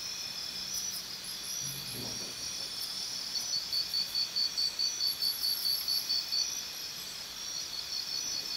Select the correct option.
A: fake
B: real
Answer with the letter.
B